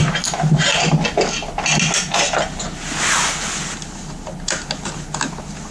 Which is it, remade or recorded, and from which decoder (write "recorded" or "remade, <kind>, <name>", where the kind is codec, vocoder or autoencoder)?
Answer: recorded